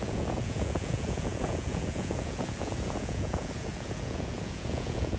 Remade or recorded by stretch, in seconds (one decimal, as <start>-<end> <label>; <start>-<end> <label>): 0.0-5.2 remade